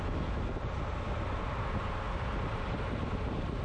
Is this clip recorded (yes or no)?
yes